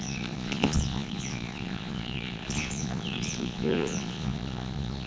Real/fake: fake